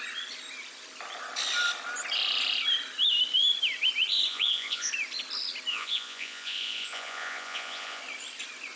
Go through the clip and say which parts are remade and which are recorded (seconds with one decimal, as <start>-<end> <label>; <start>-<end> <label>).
0.0-4.3 recorded; 4.3-4.9 remade; 4.9-5.7 recorded; 5.7-8.0 remade; 8.0-8.8 recorded